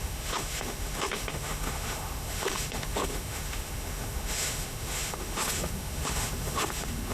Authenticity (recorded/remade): remade